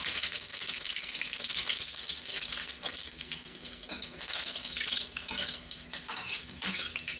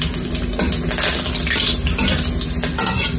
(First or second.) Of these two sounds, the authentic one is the second